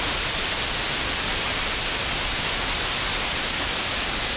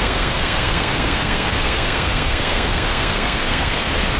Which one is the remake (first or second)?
second